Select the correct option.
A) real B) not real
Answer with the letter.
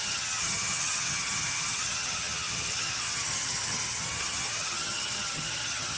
B